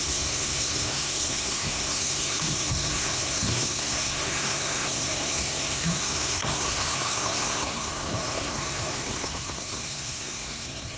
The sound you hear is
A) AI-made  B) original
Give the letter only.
A